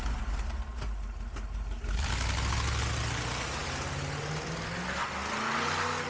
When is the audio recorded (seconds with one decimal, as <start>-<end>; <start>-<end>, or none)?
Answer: 0.0-6.1